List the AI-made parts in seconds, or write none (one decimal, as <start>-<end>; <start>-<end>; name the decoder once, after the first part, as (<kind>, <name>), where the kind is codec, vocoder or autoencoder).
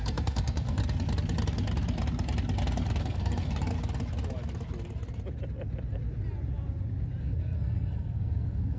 0.0-0.8 (codec, SNAC); 3.0-3.7; 7.2-8.8